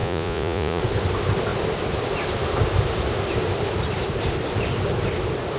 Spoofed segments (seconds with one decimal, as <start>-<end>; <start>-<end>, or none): 0.0-0.8